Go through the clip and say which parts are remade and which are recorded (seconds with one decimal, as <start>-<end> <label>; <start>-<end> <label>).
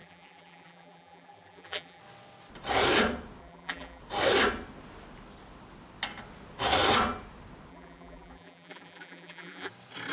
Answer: 0.0-2.0 remade; 2.0-3.4 recorded; 3.4-4.0 remade; 4.0-7.7 recorded; 7.7-9.7 remade; 9.7-10.1 recorded